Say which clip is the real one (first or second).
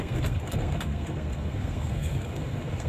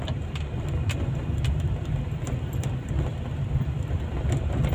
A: second